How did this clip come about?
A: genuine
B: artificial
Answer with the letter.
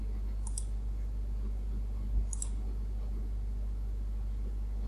A